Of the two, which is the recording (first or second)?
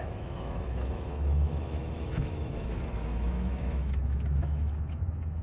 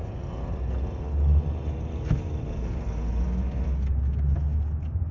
second